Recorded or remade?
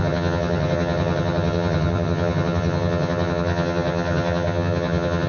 remade